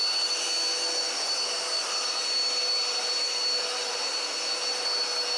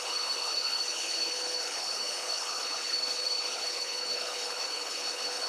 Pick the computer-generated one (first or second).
second